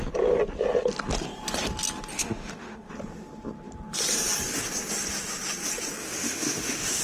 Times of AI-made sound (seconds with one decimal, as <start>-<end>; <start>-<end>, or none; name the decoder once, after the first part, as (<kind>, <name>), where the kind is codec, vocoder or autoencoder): 2.1-2.9 (autoencoder, DAC-VAE); 6.0-7.0